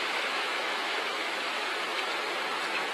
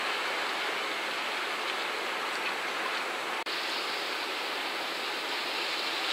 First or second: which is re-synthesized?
first